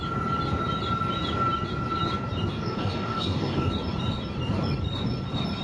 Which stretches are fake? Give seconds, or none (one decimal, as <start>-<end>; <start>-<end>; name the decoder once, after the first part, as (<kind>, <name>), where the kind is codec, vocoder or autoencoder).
2.5-3.7 (codec, DAC)